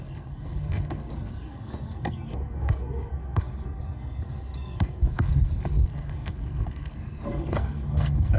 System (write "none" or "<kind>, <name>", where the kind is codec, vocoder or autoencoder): codec, SNAC